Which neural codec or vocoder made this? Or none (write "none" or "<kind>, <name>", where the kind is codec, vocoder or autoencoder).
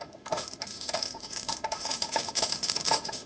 autoencoder, DAC-VAE